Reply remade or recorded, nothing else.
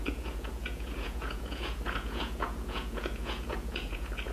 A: remade